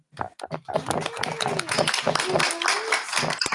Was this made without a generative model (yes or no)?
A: yes